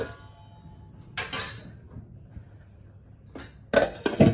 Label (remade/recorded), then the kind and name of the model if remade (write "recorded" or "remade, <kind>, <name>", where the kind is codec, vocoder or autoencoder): recorded